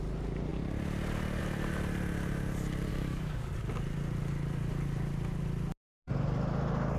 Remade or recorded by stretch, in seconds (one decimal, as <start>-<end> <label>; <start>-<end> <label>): 0.0-2.9 recorded; 2.9-3.6 remade; 3.6-7.0 recorded